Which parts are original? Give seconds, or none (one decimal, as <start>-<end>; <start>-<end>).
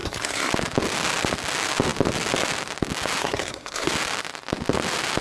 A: 0.5-3.2; 3.9-5.2